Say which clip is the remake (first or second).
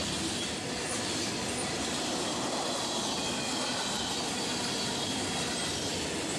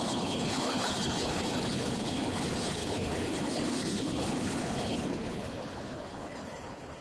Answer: second